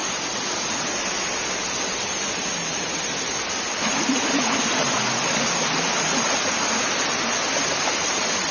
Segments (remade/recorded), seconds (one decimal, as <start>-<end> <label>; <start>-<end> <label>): 0.0-8.5 recorded